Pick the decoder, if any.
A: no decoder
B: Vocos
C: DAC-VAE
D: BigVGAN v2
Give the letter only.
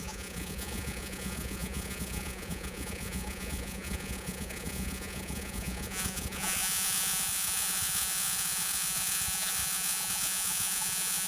B